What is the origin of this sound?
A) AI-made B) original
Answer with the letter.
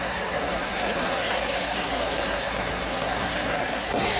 A